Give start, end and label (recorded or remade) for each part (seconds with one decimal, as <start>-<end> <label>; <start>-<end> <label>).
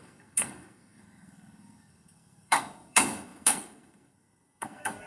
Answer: 0.0-5.1 remade